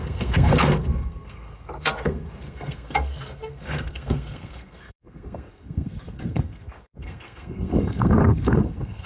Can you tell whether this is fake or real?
fake